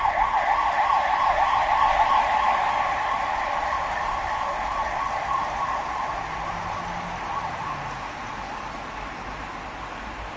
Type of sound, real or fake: real